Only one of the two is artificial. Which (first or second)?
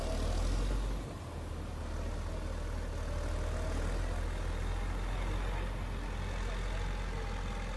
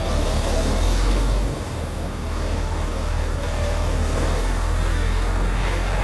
second